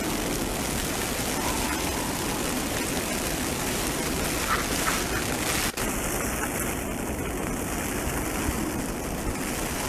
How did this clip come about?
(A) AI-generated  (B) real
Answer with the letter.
B